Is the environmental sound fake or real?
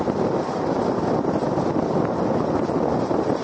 real